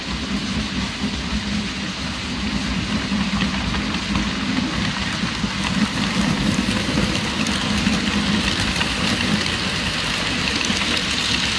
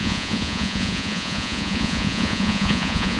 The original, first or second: first